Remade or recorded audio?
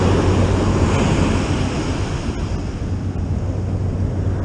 recorded